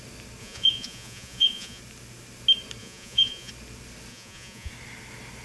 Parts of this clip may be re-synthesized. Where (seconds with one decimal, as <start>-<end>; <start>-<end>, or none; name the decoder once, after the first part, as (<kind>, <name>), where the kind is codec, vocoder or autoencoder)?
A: 0.4-1.8 (vocoder, Vocos); 2.8-3.5; 4.1-4.7